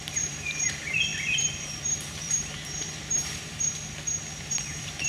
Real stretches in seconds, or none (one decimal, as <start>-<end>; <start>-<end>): 3.4-4.4

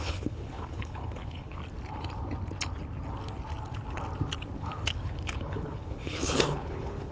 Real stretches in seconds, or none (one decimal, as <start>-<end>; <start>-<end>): 1.6-4.6

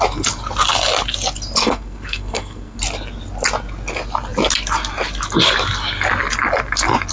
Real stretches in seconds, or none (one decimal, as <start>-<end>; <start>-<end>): 0.0-1.6; 2.8-7.1

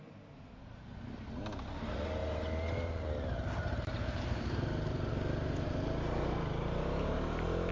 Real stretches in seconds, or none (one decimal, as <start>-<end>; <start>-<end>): 0.0-7.7

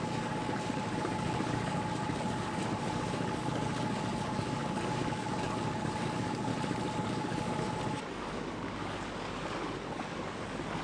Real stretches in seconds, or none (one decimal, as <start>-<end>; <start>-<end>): 6.5-7.0

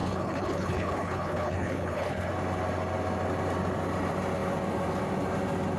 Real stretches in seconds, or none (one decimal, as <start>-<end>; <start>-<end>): 2.3-5.8